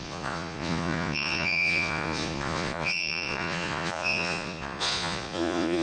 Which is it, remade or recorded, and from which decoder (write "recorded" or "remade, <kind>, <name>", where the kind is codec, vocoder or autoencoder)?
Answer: remade, vocoder, Vocos